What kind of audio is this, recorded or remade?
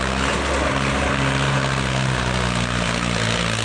recorded